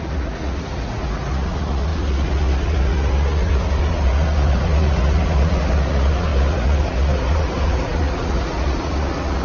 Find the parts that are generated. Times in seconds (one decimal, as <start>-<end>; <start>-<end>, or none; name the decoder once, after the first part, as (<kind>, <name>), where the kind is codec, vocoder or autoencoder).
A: 0.0-9.4 (vocoder, Vocos)